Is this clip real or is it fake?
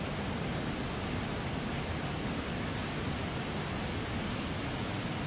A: real